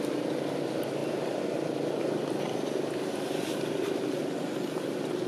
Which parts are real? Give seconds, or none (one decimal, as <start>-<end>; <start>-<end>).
0.0-5.3